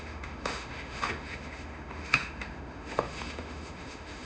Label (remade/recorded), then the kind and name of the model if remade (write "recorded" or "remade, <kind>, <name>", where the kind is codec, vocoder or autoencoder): remade, autoencoder, DAC-VAE